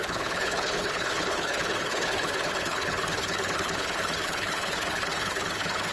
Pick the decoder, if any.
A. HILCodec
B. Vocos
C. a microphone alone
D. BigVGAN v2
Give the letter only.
A